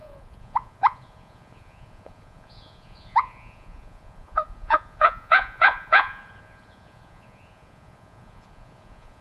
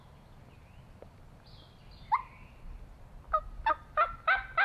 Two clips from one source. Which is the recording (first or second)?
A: second